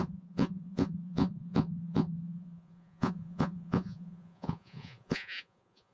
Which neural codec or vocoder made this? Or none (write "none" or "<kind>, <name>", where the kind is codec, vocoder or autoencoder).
vocoder, Vocos